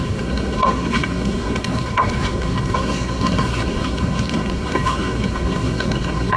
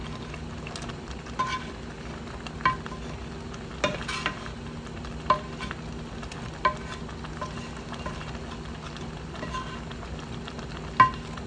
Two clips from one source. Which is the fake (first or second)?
first